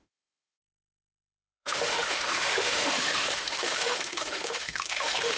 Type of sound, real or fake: fake